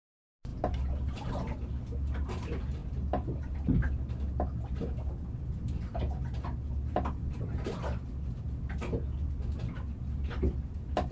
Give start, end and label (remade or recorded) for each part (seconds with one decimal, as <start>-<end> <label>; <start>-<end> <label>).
0.0-11.1 recorded